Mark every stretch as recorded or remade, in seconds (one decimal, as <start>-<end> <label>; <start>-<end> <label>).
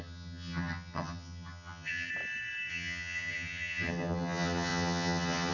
0.0-2.1 remade; 2.1-2.7 recorded; 2.7-5.5 remade